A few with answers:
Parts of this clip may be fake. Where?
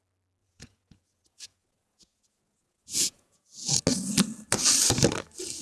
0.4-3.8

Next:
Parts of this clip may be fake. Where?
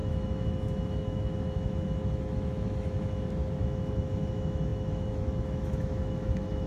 0.0-6.7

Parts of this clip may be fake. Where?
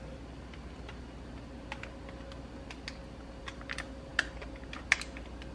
none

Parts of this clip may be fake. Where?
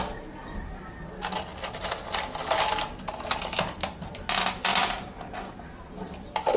0.4-1.1; 4.6-5.2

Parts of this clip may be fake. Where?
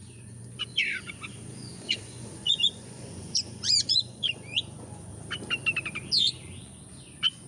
0.0-5.1; 6.2-7.5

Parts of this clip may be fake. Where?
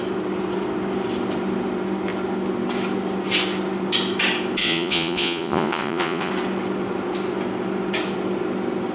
4.6-6.3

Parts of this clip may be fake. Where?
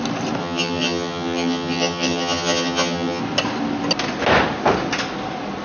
0.4-3.2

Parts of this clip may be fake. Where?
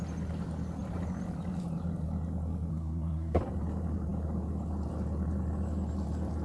2.7-3.4